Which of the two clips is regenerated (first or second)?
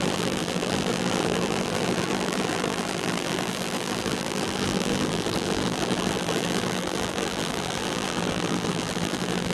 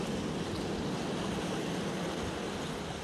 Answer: first